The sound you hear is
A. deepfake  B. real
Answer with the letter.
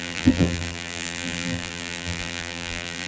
A